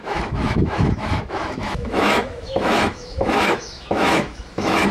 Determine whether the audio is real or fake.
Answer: fake